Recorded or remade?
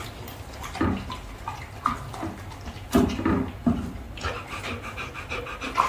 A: recorded